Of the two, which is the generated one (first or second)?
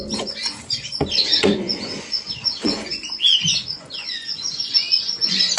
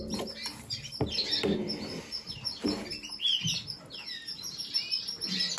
first